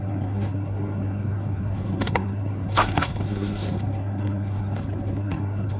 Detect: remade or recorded remade